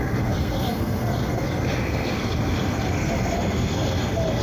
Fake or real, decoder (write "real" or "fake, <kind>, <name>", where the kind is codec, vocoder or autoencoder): fake, codec, SNAC